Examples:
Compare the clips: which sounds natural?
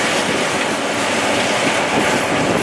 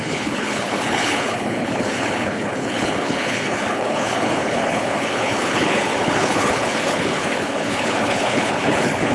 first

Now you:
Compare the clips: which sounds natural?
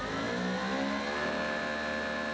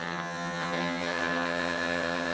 first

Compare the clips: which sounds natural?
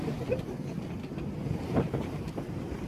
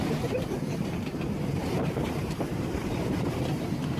first